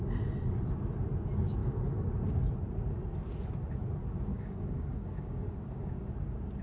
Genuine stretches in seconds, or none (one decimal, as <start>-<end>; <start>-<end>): 0.0-1.6; 2.1-4.3; 5.9-6.6